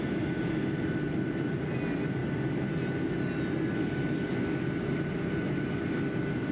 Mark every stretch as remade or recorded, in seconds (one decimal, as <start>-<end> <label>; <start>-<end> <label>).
0.0-6.5 recorded